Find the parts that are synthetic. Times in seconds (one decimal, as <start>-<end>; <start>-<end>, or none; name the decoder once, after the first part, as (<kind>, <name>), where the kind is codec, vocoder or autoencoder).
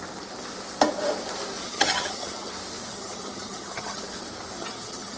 1.6-2.5 (vocoder, HiFi-GAN); 2.9-4.0; 4.6-5.2